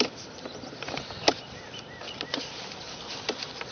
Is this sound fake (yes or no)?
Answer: no